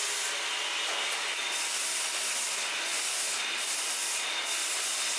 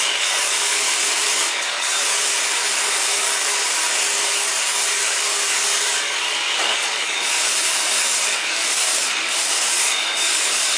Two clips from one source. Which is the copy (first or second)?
second